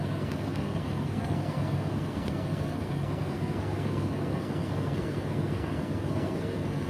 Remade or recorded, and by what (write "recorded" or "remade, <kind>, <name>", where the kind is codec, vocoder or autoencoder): remade, codec, SNAC